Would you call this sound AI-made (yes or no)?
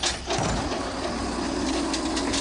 no